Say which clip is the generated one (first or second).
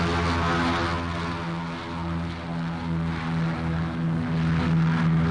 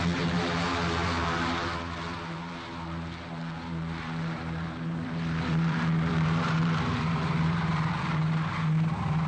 second